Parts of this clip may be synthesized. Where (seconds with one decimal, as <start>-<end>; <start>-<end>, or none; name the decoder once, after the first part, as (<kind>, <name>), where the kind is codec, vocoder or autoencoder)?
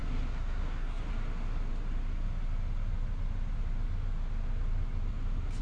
0.0-1.1 (codec, SNAC)